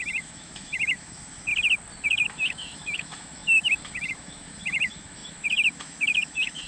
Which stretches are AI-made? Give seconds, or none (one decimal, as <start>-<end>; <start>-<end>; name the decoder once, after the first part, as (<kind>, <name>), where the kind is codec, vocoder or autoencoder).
0.0-1.5 (autoencoder, DAC-VAE); 2.0-6.7